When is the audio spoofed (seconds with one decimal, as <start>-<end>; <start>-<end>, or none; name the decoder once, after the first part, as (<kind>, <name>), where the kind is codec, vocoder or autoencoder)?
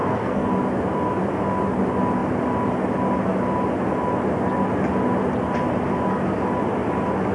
0.0-0.5 (codec, SNAC)